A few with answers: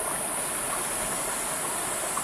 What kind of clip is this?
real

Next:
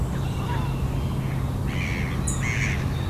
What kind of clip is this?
real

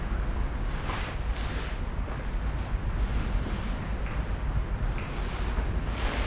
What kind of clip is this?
real